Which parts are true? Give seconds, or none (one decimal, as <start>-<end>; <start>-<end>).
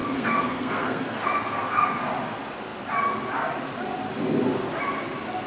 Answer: 2.0-5.5